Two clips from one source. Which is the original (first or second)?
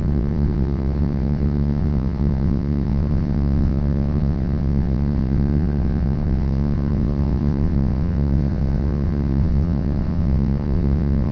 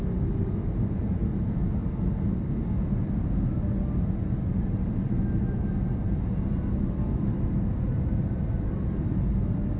second